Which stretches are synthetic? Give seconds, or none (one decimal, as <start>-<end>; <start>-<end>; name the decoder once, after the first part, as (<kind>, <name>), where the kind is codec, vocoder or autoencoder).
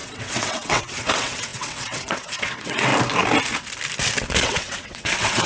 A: 0.0-2.9 (vocoder, WaveNeXt); 4.4-5.5